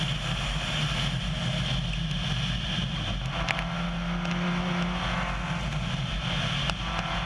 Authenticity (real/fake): real